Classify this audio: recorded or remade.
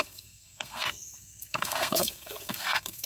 remade